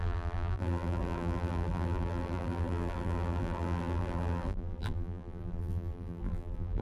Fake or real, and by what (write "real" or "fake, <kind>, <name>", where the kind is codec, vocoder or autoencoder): fake, vocoder, BigVGAN v2